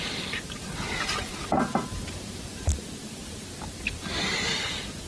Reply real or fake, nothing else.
fake